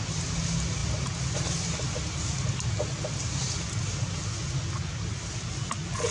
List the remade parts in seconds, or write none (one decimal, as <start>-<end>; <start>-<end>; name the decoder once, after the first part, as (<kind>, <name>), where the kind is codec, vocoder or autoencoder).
none